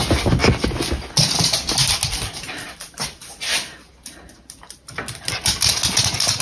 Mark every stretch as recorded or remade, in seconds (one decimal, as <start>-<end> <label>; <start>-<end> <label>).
0.0-6.4 recorded